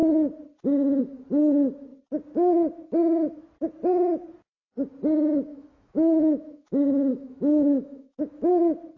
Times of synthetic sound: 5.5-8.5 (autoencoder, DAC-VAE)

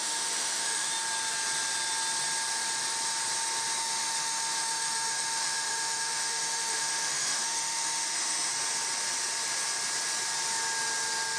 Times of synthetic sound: 0.0-0.9 (autoencoder, DAC-VAE); 3.8-8.5

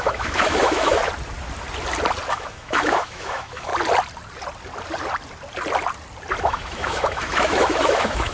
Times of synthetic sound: 0.0-1.0 (autoencoder, DAC-VAE); 2.3-3.7; 6.4-8.3